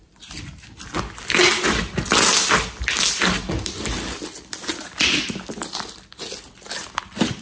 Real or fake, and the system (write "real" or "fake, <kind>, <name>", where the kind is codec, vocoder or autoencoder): real